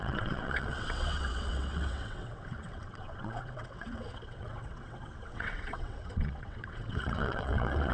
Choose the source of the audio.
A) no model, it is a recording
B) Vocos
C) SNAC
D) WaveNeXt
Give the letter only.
D